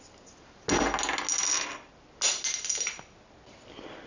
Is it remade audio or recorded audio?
recorded